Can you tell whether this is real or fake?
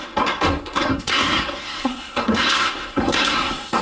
fake